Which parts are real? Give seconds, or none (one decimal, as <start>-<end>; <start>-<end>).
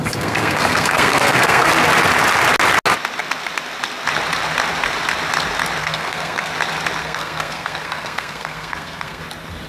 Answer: 1.7-5.8; 6.5-7.0; 9.2-9.7